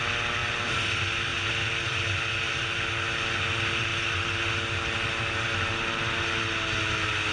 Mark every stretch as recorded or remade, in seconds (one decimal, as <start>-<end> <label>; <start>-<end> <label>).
0.0-7.3 recorded